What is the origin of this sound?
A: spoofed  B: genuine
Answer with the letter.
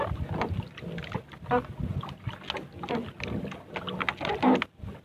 B